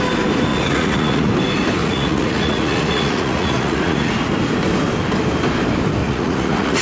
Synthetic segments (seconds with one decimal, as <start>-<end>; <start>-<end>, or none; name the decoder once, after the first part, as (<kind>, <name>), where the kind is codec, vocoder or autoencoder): 0.5-1.3 (vocoder, Vocos); 1.8-4.1; 6.0-6.8